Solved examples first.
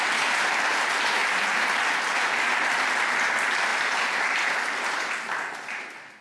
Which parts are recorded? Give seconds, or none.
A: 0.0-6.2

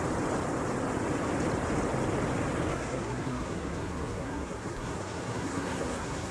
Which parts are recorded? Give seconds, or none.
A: 0.0-2.7

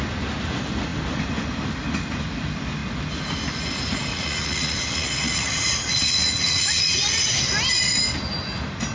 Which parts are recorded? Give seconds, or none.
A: 0.0-4.1; 7.4-8.9

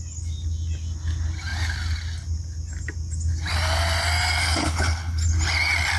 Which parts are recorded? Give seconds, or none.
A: 0.0-4.4; 5.2-6.0